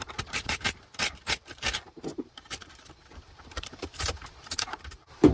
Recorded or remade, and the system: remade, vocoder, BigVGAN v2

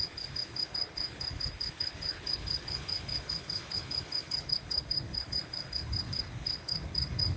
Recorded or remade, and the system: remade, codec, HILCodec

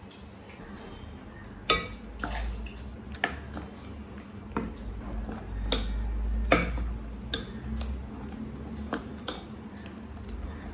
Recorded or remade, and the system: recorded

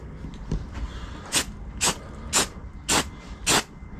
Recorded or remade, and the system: recorded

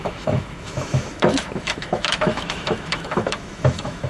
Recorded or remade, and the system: remade, autoencoder, DAC-VAE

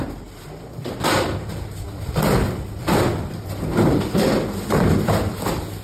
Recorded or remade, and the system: recorded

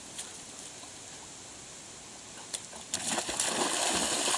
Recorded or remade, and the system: recorded